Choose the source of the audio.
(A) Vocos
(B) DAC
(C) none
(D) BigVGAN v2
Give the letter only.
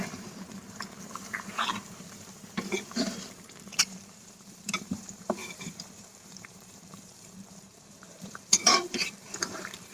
D